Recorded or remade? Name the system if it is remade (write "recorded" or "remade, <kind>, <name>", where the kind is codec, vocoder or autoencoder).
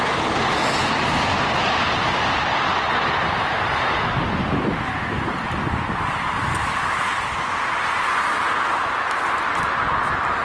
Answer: recorded